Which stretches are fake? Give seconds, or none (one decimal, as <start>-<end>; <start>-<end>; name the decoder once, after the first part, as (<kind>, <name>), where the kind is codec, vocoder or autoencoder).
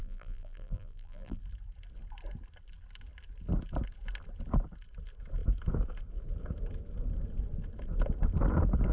0.0-1.4 (vocoder, BigVGAN v2)